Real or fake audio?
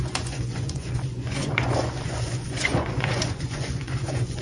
fake